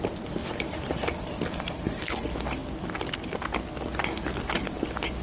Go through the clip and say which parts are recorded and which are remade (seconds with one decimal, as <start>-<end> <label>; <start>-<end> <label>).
0.0-5.2 recorded